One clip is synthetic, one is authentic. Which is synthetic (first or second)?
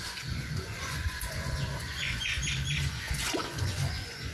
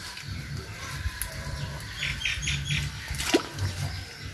first